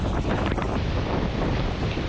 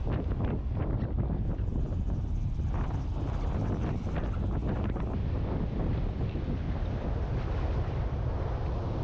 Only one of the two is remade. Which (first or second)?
first